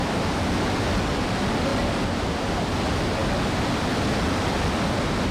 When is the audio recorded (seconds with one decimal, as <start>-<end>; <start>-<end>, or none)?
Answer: 0.0-5.3